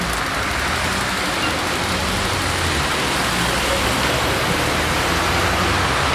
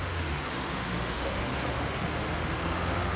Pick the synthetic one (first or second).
second